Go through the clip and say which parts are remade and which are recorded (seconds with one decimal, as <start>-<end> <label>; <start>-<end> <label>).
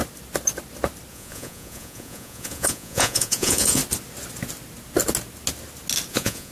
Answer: 0.0-1.1 recorded; 1.1-3.8 remade; 3.8-6.1 recorded; 6.1-6.5 remade